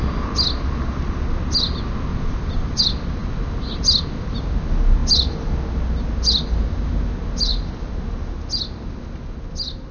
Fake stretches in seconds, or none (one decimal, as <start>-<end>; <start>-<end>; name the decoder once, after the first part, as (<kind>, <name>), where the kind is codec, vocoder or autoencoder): 2.1-2.8 (vocoder, BigVGAN v2)

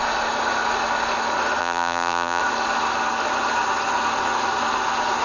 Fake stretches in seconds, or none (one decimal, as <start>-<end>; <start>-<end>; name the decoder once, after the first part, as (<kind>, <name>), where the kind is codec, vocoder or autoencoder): 1.6-2.4 (vocoder, BigVGAN v2)

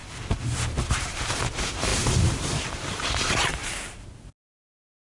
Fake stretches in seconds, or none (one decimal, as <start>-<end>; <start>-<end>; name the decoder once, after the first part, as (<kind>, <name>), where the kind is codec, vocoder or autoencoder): 0.9-3.6 (vocoder, BigVGAN v2); 4.6-5.1

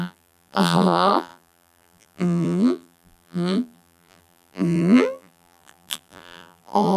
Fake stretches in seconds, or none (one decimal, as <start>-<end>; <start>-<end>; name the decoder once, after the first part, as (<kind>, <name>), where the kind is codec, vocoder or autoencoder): 0.0-7.0 (vocoder, BigVGAN v2)

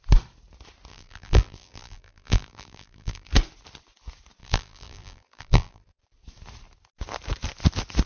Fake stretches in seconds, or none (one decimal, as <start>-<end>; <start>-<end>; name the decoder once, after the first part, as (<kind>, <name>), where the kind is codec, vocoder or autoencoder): 0.9-3.3 (vocoder, BigVGAN v2); 4.4-6.0